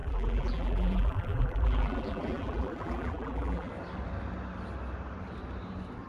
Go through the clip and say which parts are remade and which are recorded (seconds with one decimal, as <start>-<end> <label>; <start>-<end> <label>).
0.0-3.7 remade; 3.7-6.1 recorded